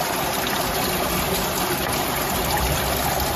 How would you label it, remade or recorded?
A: recorded